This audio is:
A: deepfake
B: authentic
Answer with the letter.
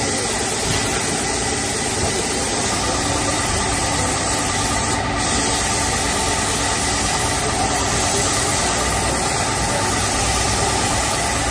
B